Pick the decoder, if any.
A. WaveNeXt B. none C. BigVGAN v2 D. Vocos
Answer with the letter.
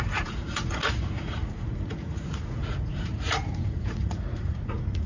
D